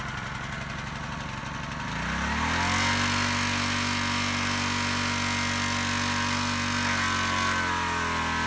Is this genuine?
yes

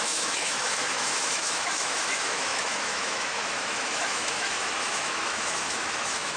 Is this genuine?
no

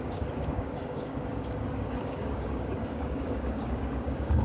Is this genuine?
no